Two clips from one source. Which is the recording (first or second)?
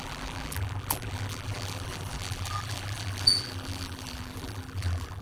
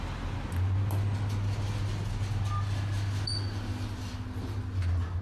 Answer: second